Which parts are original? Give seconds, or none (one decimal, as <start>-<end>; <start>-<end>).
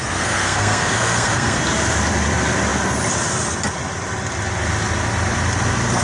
1.6-6.0